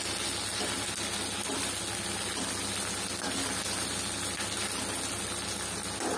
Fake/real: real